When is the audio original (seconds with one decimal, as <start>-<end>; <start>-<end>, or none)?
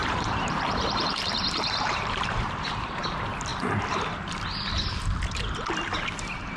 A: 3.0-6.6